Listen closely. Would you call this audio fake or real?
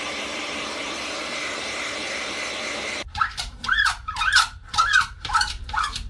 fake